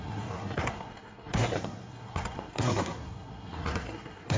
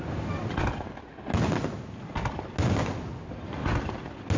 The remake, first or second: first